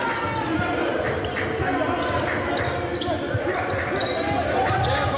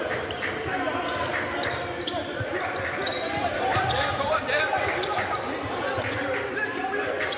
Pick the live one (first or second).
first